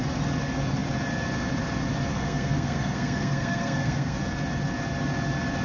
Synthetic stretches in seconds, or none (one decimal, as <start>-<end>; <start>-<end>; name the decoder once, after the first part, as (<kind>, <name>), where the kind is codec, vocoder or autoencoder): 2.1-4.2 (codec, SNAC)